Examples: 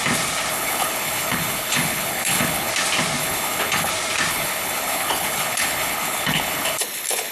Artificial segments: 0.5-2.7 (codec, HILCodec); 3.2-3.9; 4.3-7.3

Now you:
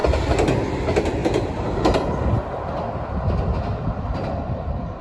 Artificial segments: none